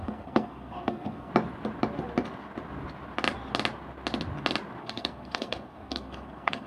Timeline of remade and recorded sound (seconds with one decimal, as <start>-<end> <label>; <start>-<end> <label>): 0.0-1.3 remade; 1.3-4.8 recorded; 4.8-6.7 remade